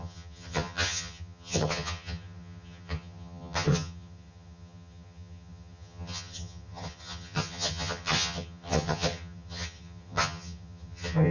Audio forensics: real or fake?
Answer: fake